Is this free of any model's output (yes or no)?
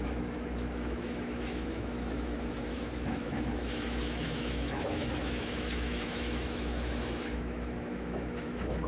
no